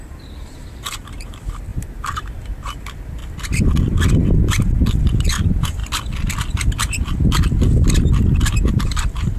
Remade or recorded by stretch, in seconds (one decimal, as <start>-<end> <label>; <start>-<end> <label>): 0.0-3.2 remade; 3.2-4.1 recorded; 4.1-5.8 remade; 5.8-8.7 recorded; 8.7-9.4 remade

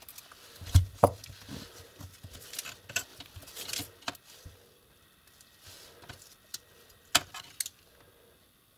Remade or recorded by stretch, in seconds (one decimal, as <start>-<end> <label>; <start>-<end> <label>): 0.0-8.8 recorded

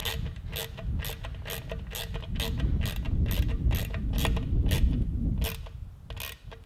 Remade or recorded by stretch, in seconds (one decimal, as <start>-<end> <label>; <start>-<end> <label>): 0.0-6.7 recorded

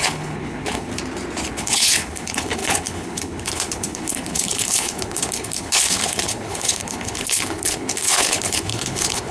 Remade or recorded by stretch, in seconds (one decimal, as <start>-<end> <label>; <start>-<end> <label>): 0.0-0.9 remade; 0.9-1.5 recorded; 1.5-9.3 remade